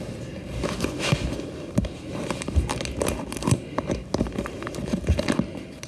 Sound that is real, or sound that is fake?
real